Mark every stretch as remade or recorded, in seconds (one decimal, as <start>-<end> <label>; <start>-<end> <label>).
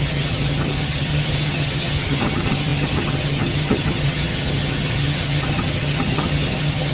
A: 0.0-6.9 remade